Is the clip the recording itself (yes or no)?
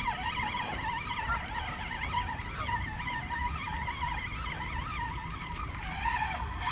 yes